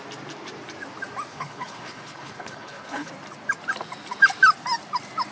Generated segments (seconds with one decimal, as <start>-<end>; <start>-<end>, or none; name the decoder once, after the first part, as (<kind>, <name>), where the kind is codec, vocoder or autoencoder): 1.3-3.1 (codec, HILCodec)